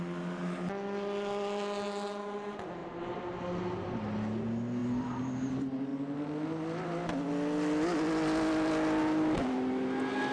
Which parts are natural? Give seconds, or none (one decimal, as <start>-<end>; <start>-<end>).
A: 0.0-2.8; 4.0-10.3